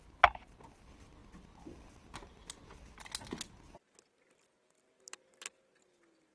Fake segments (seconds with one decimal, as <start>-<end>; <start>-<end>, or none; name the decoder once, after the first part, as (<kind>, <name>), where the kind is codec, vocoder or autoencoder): none